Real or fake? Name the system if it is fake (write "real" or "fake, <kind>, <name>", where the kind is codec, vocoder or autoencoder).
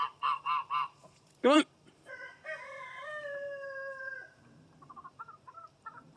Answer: fake, vocoder, BigVGAN v2